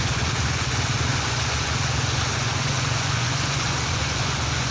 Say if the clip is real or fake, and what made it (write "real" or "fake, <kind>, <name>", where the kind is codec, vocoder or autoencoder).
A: fake, vocoder, Vocos